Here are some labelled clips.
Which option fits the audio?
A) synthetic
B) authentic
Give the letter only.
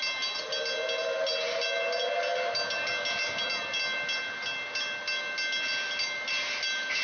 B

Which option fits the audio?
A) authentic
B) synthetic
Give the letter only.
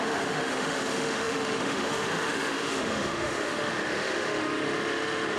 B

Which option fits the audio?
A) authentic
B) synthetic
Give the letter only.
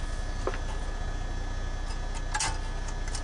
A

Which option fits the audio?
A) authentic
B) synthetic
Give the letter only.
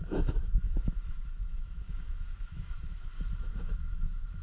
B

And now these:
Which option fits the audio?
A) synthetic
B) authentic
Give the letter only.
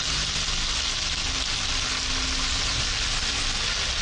B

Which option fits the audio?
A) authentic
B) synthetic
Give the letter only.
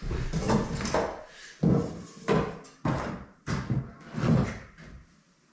A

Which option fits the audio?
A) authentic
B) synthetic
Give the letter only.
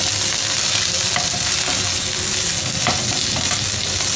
A